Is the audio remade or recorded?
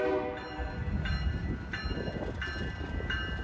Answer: recorded